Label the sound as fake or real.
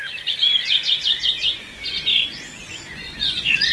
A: fake